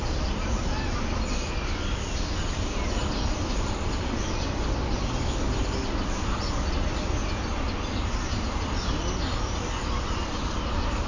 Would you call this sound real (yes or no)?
yes